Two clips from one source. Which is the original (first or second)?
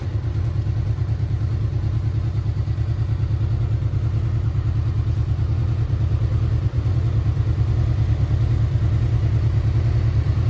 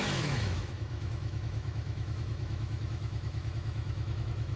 first